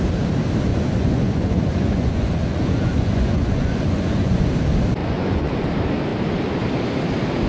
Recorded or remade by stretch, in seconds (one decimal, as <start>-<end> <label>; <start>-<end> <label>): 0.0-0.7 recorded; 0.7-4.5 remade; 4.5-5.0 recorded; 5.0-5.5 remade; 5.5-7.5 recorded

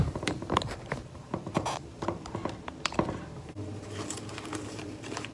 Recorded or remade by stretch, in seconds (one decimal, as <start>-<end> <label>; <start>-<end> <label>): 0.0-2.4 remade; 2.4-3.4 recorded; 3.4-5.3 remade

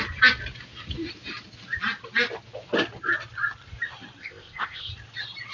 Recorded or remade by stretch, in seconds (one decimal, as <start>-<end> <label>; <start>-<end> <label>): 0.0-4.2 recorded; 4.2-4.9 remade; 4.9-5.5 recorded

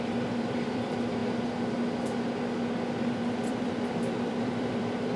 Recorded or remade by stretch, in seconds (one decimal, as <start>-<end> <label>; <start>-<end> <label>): 0.0-1.2 remade; 1.2-3.5 recorded; 3.5-5.2 remade

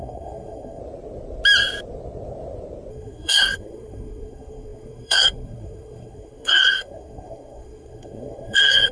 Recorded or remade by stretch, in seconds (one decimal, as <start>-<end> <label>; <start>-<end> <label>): 0.0-0.8 remade; 0.8-2.9 recorded; 2.9-8.9 remade

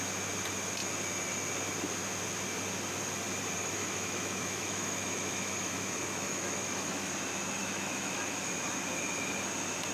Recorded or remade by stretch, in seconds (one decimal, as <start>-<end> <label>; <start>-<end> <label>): 0.0-3.6 recorded; 3.6-7.1 remade; 7.1-7.6 recorded; 7.6-8.5 remade; 8.5-9.9 recorded